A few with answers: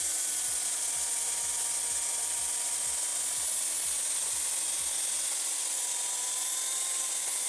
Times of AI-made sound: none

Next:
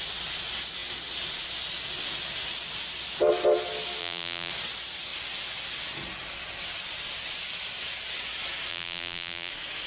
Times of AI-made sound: 4.0-4.5; 8.7-9.5

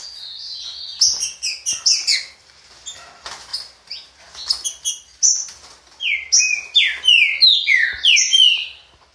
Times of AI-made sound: none